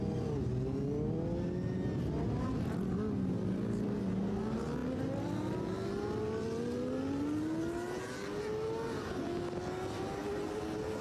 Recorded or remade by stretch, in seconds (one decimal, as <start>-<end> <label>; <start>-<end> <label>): 0.0-11.0 recorded